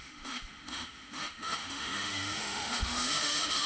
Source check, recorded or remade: remade